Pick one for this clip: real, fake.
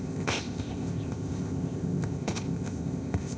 fake